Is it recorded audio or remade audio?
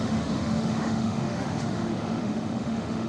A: remade